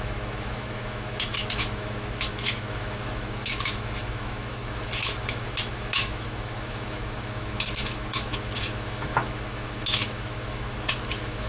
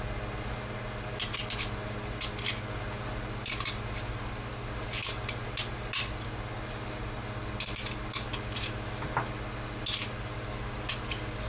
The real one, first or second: second